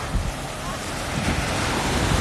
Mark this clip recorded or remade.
remade